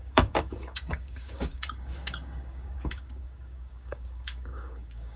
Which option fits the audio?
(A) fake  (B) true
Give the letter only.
A